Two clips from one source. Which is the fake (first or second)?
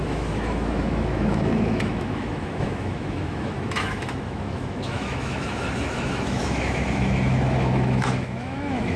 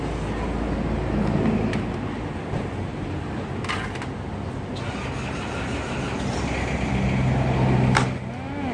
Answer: first